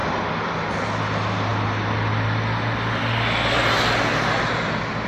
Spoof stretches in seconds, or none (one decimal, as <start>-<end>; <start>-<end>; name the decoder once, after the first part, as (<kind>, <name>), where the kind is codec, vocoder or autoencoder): none